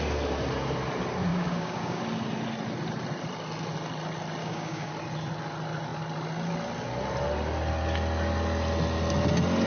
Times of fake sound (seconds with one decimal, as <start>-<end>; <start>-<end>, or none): 1.3-2.0; 4.4-4.9